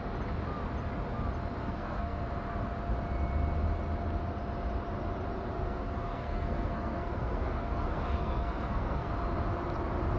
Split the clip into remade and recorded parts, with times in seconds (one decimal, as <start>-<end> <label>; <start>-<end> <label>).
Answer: 0.0-1.6 recorded; 1.6-2.2 remade; 2.2-5.5 recorded; 5.5-9.1 remade; 9.1-10.2 recorded